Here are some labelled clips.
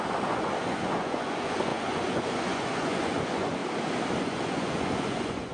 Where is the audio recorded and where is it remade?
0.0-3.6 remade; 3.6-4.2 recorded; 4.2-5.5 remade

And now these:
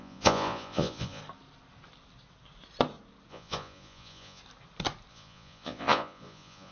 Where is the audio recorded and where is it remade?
0.0-1.2 remade; 1.2-3.3 recorded; 3.3-4.4 remade; 4.4-5.1 recorded; 5.1-6.7 remade